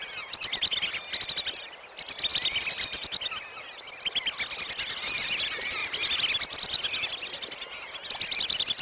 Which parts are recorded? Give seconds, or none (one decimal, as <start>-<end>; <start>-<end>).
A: 0.0-8.8